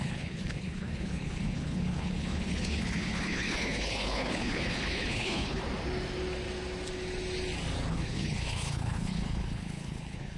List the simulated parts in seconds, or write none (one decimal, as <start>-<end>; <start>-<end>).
0.0-5.6; 7.9-10.4